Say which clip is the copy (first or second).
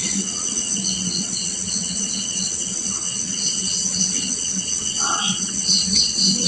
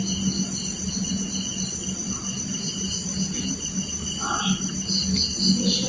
first